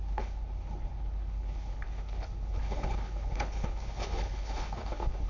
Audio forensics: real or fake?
fake